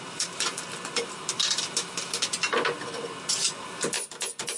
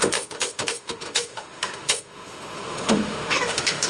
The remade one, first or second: second